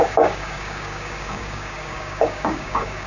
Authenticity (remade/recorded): remade